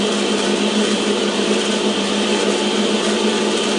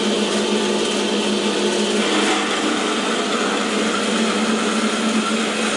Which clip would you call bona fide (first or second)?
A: second